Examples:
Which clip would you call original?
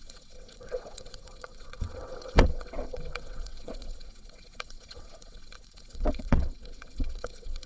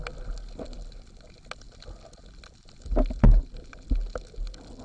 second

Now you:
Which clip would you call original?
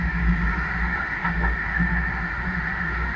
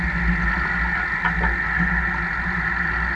second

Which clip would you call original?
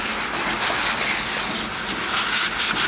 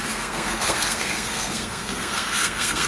first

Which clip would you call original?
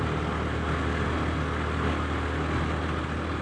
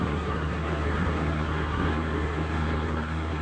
first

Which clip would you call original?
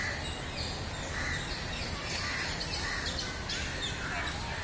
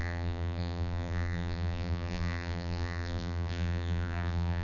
first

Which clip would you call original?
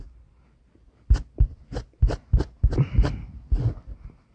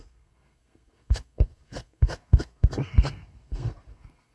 first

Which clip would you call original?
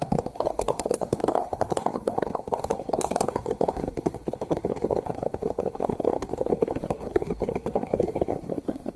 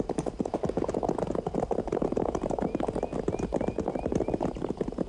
second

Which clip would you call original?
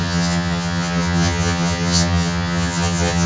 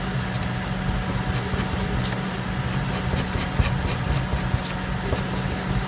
second